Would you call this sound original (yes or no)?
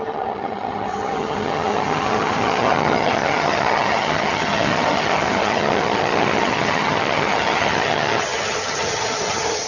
no